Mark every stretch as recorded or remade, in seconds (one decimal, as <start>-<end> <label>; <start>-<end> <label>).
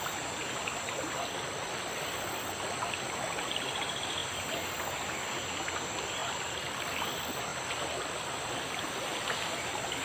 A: 0.0-10.0 recorded